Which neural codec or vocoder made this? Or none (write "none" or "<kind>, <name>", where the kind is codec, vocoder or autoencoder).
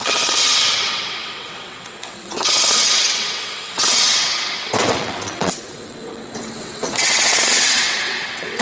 vocoder, WaveNeXt